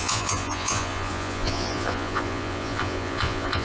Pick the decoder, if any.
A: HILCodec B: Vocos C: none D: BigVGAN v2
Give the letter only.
B